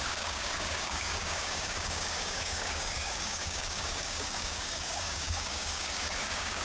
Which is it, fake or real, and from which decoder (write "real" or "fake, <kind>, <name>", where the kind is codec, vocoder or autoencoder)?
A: fake, codec, DAC